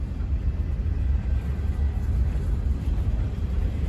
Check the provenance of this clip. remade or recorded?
recorded